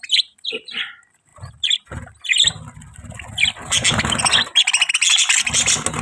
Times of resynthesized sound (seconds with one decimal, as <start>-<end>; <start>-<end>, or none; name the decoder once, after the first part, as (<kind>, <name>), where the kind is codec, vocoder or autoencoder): none